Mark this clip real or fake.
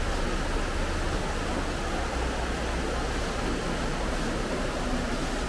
real